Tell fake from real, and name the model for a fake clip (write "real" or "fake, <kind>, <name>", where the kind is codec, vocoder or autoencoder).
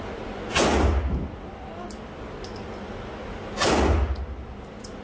real